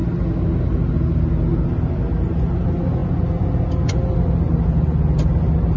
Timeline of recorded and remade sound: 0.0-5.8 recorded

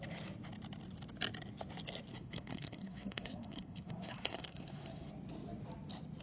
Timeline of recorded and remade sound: 0.0-2.1 recorded; 2.1-5.1 remade; 5.1-6.2 recorded